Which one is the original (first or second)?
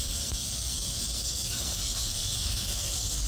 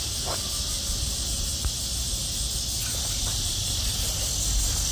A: second